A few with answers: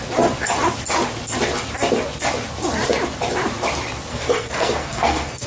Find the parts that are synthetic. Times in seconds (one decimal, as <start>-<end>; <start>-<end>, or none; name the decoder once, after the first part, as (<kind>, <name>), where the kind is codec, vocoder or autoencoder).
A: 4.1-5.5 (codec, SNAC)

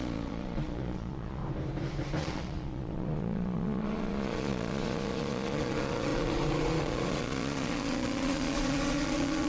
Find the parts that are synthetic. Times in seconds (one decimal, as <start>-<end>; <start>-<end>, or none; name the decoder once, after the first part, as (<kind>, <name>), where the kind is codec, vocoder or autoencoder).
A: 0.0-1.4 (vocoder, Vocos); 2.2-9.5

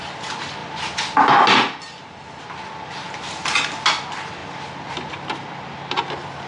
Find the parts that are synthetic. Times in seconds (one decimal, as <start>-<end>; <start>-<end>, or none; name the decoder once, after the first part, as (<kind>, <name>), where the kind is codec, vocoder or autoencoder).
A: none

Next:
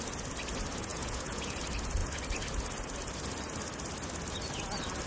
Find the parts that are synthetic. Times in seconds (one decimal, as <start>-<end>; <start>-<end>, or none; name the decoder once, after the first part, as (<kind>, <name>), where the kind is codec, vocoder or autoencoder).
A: 0.9-1.6 (vocoder, Vocos)

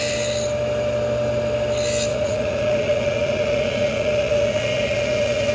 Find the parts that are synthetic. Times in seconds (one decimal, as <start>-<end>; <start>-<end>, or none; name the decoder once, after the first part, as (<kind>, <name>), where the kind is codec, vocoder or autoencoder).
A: 2.1-5.5 (vocoder, Vocos)